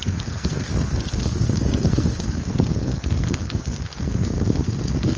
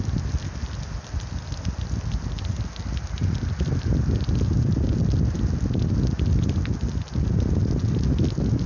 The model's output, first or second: first